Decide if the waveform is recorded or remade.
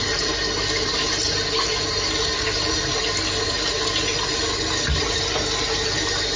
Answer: recorded